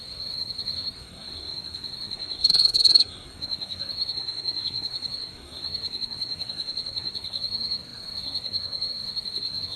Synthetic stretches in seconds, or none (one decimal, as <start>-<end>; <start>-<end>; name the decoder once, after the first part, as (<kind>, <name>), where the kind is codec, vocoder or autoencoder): 0.0-9.8 (codec, SNAC)